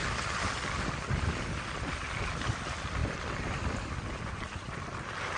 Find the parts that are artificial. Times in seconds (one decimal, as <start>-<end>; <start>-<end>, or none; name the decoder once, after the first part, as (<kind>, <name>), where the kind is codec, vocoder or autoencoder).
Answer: none